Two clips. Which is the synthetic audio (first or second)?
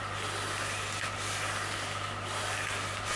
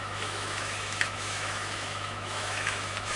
second